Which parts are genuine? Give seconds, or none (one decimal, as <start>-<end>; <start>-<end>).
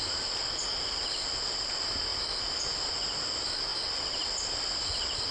0.0-5.3